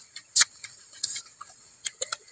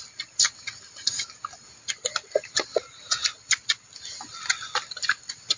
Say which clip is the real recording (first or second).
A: second